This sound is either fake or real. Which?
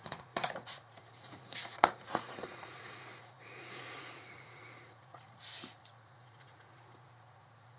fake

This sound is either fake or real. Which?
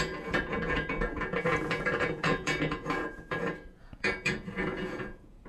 fake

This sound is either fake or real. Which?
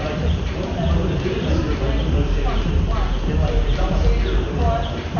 real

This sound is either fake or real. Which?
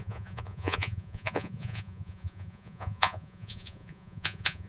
fake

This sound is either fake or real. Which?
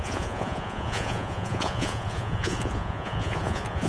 fake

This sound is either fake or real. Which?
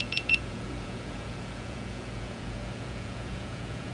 fake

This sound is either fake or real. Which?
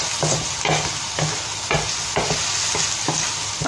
real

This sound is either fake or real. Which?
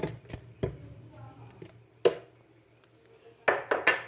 real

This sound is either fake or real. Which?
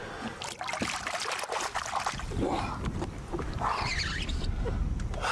real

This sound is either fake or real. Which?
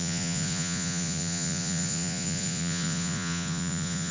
fake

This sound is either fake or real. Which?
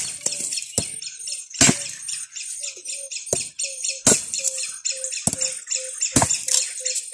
real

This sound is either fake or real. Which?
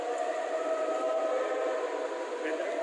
real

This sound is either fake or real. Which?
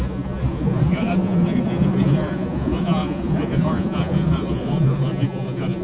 fake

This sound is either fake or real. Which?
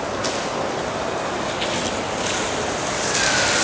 real